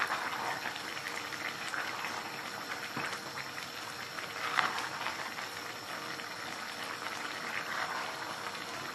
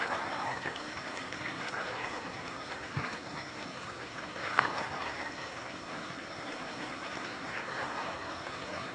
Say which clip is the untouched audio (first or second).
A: first